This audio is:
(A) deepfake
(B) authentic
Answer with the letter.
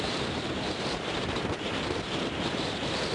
A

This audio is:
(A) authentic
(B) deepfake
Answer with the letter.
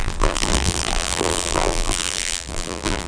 B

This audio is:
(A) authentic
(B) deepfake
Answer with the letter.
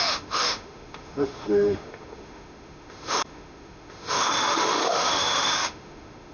B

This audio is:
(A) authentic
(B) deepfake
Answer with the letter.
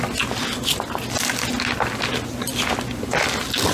A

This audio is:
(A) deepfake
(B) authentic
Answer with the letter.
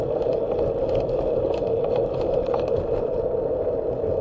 B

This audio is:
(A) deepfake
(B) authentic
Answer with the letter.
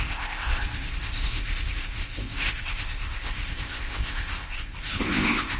A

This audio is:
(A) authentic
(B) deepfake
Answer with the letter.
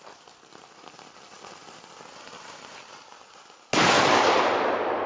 A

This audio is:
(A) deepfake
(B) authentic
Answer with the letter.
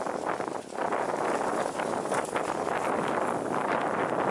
B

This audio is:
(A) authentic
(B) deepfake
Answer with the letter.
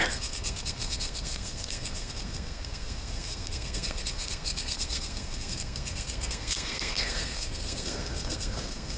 B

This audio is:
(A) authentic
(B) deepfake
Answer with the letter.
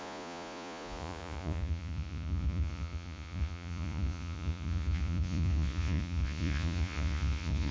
B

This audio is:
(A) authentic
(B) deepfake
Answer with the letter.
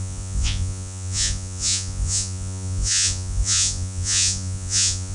B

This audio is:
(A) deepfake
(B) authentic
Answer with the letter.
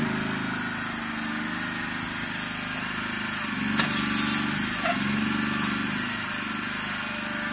B